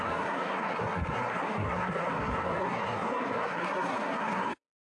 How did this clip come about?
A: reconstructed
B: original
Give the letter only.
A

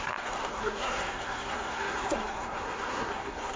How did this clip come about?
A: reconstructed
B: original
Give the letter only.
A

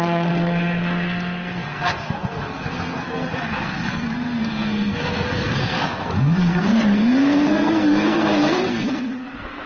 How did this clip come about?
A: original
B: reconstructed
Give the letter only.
B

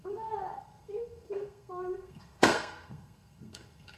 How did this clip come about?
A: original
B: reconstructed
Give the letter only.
B